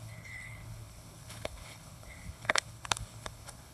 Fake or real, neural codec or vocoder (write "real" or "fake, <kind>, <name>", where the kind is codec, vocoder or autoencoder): fake, codec, HILCodec